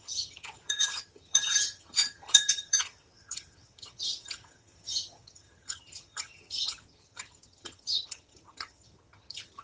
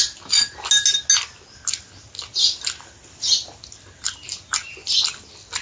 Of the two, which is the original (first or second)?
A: second